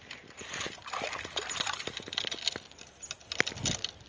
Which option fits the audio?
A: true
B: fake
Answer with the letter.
A